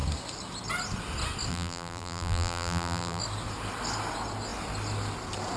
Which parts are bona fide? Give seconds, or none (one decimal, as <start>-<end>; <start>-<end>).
0.0-1.5; 3.2-5.6